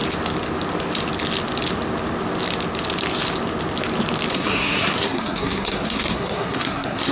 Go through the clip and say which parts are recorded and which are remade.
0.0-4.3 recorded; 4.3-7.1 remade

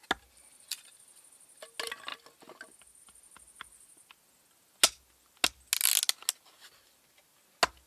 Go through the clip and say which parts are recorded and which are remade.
0.0-7.9 recorded